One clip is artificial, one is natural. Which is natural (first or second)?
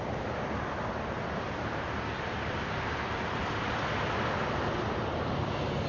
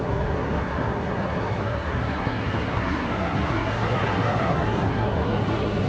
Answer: first